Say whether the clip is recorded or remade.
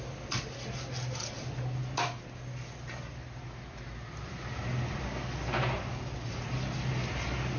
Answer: recorded